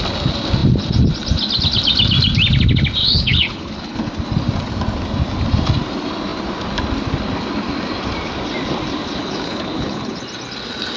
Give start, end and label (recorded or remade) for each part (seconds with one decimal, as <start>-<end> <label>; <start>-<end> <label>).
0.0-3.0 recorded; 3.0-4.1 remade; 4.1-9.2 recorded; 9.2-10.2 remade; 10.2-11.0 recorded

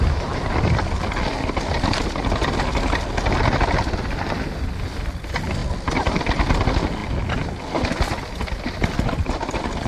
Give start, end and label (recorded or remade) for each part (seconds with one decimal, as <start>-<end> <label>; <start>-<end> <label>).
0.0-9.9 recorded

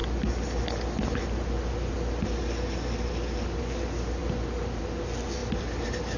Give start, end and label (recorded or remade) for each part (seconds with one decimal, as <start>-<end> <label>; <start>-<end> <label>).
0.0-6.2 recorded

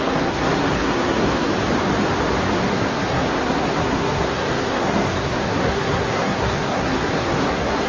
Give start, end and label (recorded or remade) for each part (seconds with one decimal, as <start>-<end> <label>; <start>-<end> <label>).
0.0-1.5 remade; 1.5-2.6 recorded; 2.6-7.9 remade

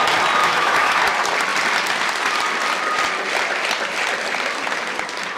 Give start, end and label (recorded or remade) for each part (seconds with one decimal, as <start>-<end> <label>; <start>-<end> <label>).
0.0-0.4 recorded; 0.4-1.0 remade; 1.0-5.4 recorded

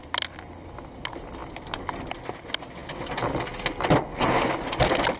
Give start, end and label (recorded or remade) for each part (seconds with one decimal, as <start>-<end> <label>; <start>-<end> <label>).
0.0-5.2 recorded

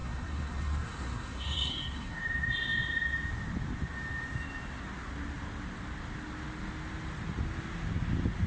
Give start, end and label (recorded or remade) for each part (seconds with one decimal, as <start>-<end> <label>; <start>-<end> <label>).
0.0-2.2 remade; 2.2-8.5 recorded

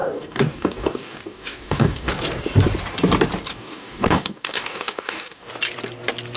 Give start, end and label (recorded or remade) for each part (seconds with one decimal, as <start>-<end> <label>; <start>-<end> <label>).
0.0-2.1 remade; 2.1-3.5 recorded; 3.5-5.5 remade; 5.5-6.4 recorded